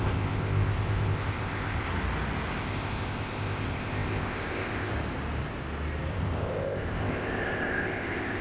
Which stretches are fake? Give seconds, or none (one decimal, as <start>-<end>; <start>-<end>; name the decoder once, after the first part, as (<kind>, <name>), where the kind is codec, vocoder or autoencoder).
0.0-1.9 (codec, ZipCodec); 2.5-4.9; 6.1-8.4